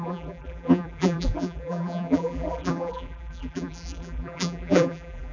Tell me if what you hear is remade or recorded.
remade